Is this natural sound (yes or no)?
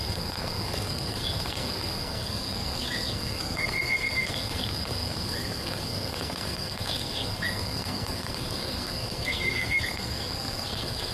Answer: no